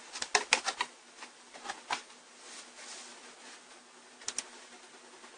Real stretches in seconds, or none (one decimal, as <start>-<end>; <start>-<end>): 0.0-5.4